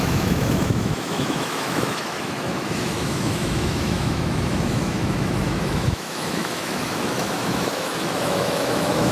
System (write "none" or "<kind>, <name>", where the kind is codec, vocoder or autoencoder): autoencoder, DAC-VAE